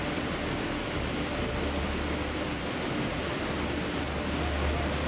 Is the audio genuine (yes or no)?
yes